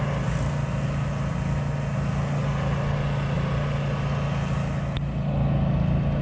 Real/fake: real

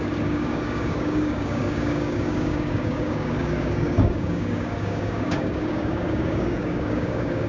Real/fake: fake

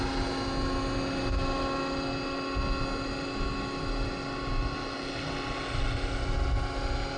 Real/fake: real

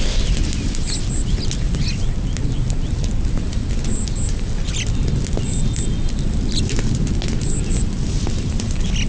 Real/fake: real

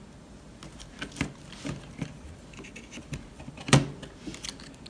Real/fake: real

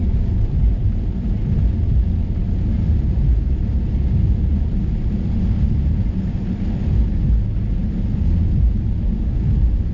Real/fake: real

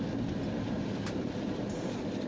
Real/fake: real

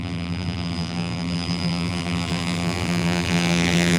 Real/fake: fake